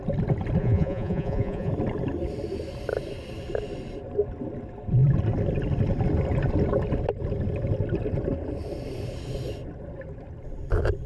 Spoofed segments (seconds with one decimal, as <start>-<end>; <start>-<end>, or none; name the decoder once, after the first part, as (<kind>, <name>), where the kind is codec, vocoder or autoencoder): 0.6-1.7 (vocoder, Vocos)